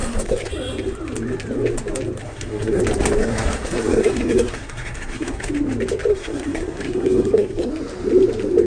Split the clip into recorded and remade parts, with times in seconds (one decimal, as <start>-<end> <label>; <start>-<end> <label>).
0.0-0.5 remade; 0.5-2.2 recorded; 2.2-2.8 remade; 2.8-3.2 recorded; 3.2-5.5 remade; 5.5-6.1 recorded; 6.1-7.7 remade; 7.7-8.7 recorded